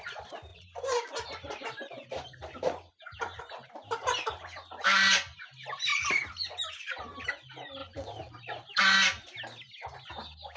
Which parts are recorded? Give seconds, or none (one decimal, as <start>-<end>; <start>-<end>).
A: 0.0-0.5; 3.4-7.8; 8.8-10.6